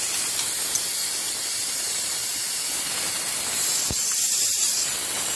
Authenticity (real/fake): real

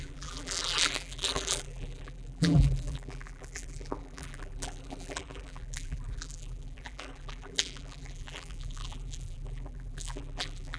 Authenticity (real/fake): fake